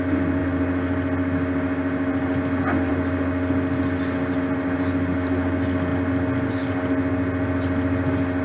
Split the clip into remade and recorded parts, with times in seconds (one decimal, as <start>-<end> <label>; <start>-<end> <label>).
0.0-8.4 recorded